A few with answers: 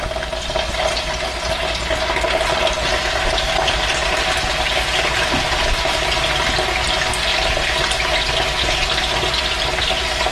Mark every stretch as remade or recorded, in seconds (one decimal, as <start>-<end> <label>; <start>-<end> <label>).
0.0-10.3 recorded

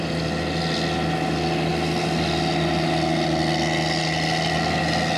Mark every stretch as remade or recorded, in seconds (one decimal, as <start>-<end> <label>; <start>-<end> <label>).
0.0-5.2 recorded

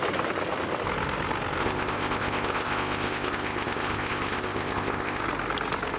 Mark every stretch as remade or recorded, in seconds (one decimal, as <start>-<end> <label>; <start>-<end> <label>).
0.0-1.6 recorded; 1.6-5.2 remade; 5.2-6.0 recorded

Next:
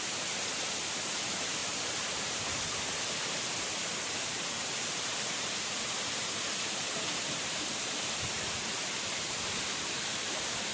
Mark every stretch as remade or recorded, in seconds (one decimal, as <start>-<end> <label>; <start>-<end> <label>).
0.0-1.6 recorded; 1.6-2.8 remade; 2.8-4.3 recorded; 4.3-8.0 remade; 8.0-10.7 recorded

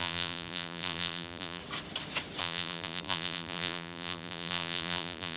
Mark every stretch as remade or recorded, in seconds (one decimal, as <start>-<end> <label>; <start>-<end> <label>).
0.0-1.6 remade; 1.6-2.4 recorded; 2.4-5.4 remade

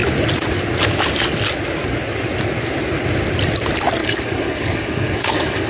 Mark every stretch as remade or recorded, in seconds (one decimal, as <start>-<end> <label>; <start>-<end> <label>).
0.0-4.0 recorded; 4.0-5.7 remade

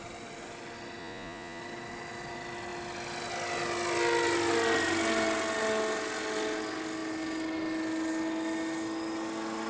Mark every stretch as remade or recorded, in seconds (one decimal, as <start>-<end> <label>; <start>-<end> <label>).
0.0-1.0 recorded; 1.0-1.6 remade; 1.6-9.7 recorded